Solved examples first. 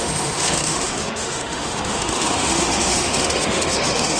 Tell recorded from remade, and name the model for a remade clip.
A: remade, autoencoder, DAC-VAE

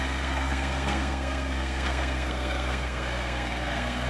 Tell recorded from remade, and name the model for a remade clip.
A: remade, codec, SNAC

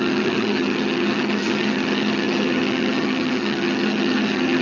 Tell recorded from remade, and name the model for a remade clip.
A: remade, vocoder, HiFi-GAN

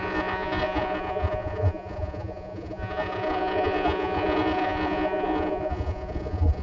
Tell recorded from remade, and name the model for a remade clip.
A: remade, vocoder, Vocos